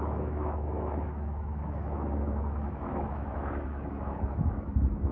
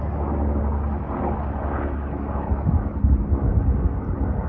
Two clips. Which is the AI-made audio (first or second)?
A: first